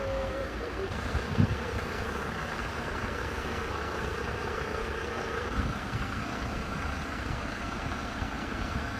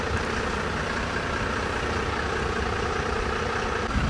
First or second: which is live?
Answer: second